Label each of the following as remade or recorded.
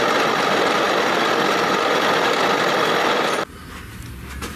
recorded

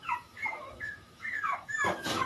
remade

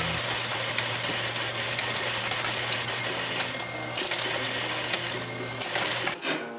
recorded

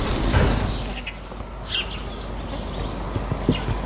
recorded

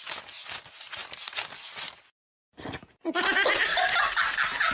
recorded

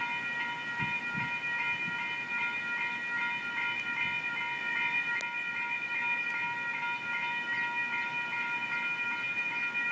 recorded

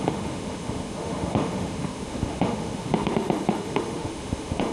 remade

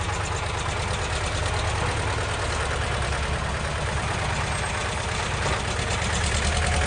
recorded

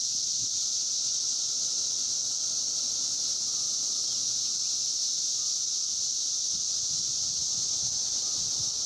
recorded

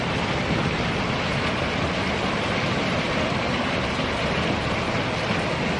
recorded